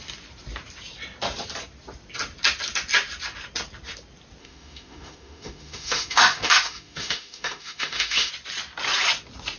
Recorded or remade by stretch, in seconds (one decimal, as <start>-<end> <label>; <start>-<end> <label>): 0.0-4.4 recorded; 4.4-8.3 remade; 8.3-9.6 recorded